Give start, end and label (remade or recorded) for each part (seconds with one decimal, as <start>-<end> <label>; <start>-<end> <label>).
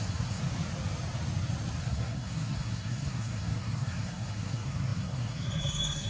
0.0-0.4 remade; 0.4-1.8 recorded; 1.8-6.1 remade